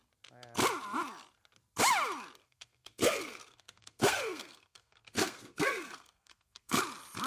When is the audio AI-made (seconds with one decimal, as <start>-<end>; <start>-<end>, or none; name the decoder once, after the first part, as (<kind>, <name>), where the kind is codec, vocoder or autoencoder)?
2.4-6.8 (codec, SNAC)